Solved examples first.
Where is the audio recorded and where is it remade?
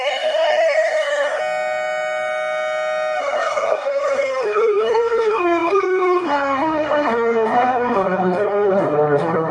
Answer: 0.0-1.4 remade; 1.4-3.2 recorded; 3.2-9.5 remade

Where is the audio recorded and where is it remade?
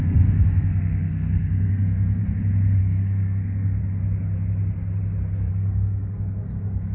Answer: 0.0-2.2 remade; 2.2-2.8 recorded; 2.8-3.8 remade; 3.8-5.5 recorded; 5.5-6.9 remade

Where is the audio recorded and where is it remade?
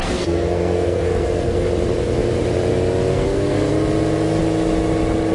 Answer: 0.0-1.7 remade; 1.7-3.1 recorded; 3.1-3.7 remade; 3.7-5.3 recorded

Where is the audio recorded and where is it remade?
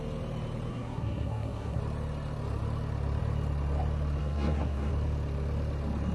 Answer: 0.0-0.7 recorded; 0.7-1.8 remade; 1.8-4.2 recorded; 4.2-4.9 remade; 4.9-6.1 recorded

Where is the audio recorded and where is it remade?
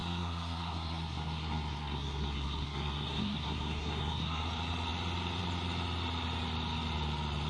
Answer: 0.0-4.5 remade; 4.5-7.5 recorded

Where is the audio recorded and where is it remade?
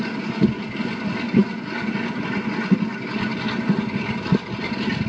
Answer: 0.0-5.1 recorded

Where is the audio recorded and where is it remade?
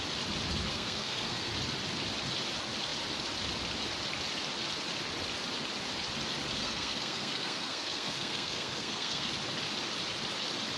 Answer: 0.0-0.7 recorded; 0.7-1.5 remade; 1.5-6.6 recorded; 6.6-9.3 remade; 9.3-10.8 recorded